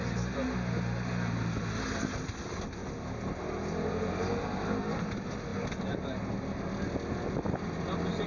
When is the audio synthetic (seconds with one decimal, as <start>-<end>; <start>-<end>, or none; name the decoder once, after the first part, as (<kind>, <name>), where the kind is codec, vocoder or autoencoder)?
none